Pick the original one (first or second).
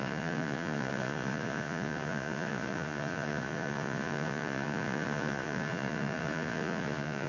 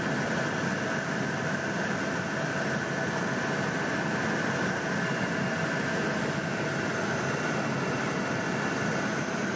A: second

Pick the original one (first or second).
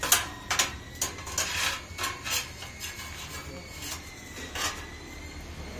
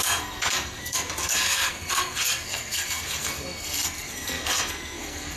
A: first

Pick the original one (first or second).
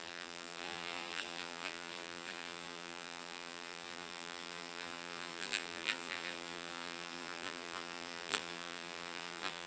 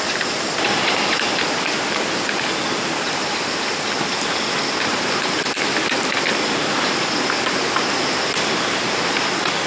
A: second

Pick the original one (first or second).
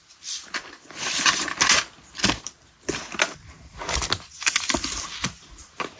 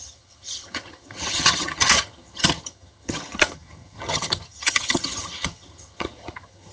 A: first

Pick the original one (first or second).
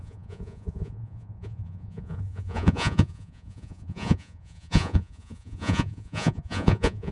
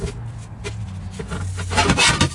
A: second